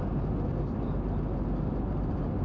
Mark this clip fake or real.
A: real